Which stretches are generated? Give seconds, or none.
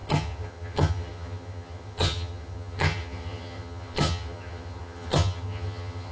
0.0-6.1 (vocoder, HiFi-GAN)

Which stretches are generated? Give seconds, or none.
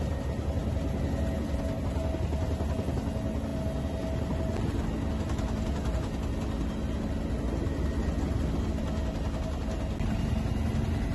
none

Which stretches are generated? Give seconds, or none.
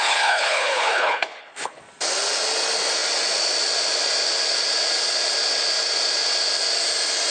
0.0-1.8 (codec, HILCodec)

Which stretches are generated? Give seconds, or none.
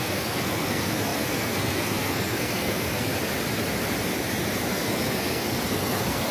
0.0-3.1 (codec, SNAC); 4.7-6.3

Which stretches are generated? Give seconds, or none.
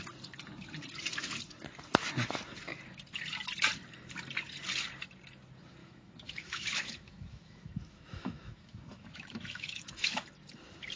5.8-10.2 (autoencoder, DAC-VAE)